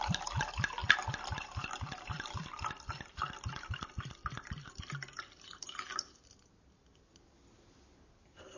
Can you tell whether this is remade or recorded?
recorded